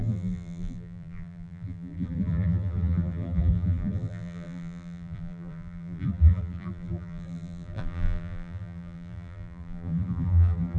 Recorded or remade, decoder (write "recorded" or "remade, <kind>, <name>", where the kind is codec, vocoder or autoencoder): remade, vocoder, BigVGAN v2